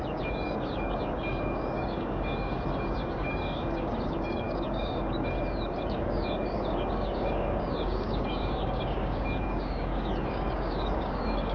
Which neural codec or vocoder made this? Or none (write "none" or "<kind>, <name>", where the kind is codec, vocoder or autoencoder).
codec, DAC